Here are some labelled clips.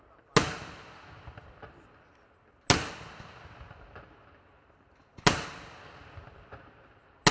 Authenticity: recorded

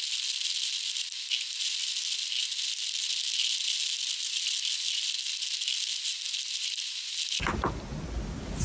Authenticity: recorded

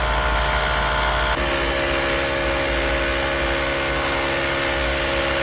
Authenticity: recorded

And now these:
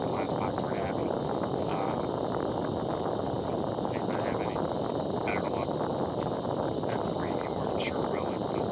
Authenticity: recorded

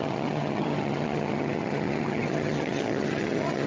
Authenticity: remade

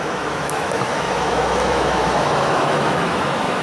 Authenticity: remade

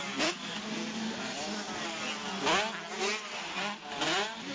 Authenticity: recorded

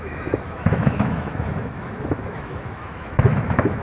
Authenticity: remade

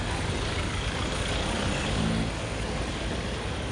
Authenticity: remade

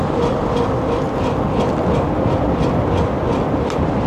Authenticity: recorded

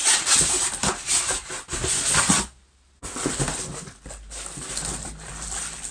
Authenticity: recorded